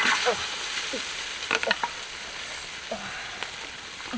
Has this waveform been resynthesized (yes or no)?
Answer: no